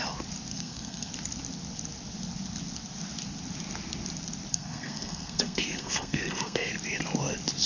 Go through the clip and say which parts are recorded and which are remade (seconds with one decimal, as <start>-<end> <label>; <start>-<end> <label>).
0.0-0.5 recorded; 0.5-1.1 remade; 1.1-4.5 recorded; 4.5-6.7 remade; 6.7-7.7 recorded